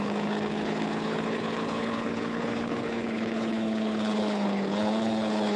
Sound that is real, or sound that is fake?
fake